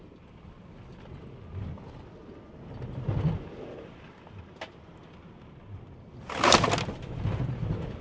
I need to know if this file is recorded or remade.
recorded